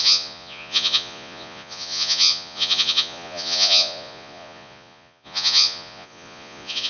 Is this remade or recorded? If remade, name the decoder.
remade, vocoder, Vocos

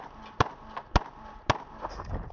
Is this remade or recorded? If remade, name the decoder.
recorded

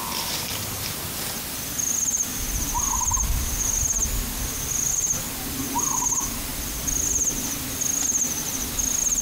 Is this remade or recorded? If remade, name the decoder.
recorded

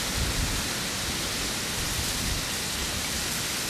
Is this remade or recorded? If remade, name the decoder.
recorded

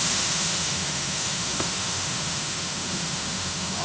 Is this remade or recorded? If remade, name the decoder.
remade, autoencoder, DAC-VAE